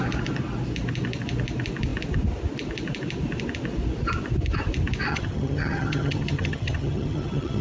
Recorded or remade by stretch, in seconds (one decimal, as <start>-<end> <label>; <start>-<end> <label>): 0.0-5.1 recorded; 5.1-7.6 remade